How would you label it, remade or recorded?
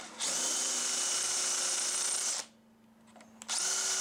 recorded